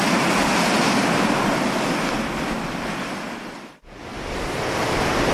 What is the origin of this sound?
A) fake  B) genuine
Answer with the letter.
A